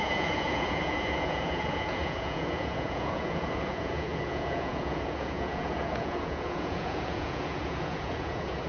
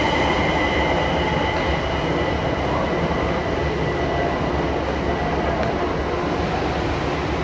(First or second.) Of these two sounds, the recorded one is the second